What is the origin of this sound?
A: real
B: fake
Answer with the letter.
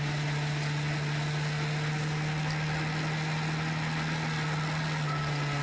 A